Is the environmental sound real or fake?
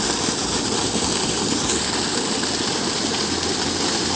real